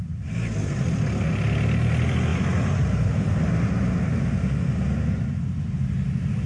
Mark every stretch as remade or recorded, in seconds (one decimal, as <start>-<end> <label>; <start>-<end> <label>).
0.0-6.5 recorded